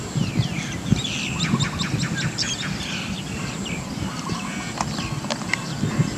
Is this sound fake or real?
real